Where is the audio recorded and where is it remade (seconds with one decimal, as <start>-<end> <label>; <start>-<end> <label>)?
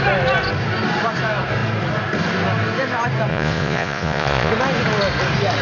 0.0-3.3 recorded; 3.3-4.5 remade; 4.5-5.6 recorded